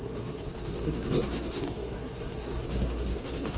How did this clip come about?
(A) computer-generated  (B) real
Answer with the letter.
A